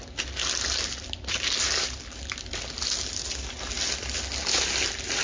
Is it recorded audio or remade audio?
recorded